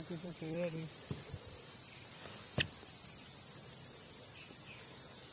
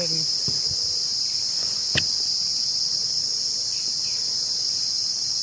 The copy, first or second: first